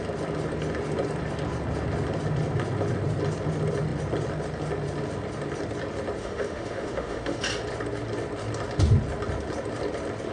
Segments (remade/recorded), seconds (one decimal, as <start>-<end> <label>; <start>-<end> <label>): 0.0-6.2 recorded; 6.2-7.4 remade; 7.4-10.3 recorded